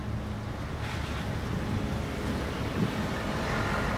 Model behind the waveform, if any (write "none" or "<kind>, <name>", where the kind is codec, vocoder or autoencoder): none